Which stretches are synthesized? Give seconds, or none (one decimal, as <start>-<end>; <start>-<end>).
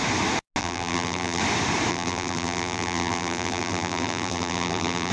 0.6-1.4; 1.9-5.1